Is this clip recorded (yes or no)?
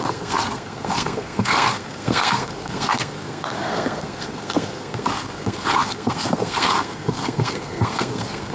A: no